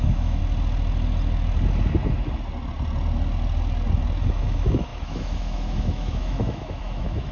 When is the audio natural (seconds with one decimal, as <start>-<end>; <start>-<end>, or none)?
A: 0.4-4.2